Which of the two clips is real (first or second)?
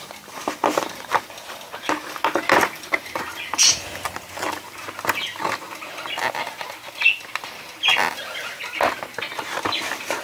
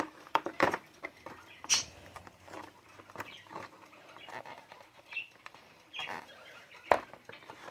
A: first